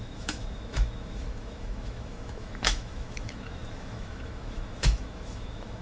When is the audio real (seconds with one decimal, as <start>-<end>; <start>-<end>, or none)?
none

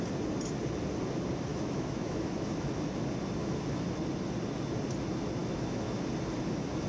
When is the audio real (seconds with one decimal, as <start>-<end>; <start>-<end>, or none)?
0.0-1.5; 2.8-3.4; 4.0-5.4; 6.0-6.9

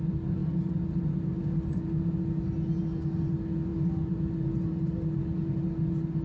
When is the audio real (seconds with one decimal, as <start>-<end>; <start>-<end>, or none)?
0.0-6.2

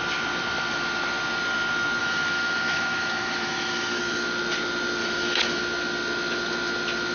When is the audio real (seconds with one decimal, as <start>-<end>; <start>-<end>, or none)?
0.0-2.0; 4.0-5.0; 5.6-7.1

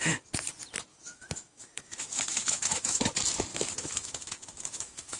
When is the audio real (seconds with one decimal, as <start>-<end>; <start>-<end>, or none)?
0.0-0.9; 3.0-3.5

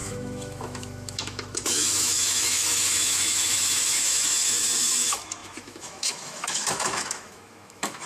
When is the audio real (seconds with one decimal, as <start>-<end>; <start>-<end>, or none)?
none

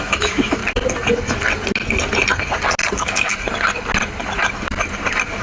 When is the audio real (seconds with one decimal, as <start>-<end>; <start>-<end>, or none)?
0.6-2.9; 3.3-5.4

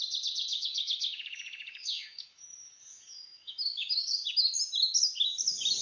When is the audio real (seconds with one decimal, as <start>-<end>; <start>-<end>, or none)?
0.0-0.5; 4.0-5.8